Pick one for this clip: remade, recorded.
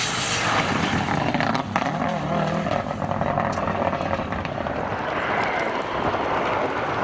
recorded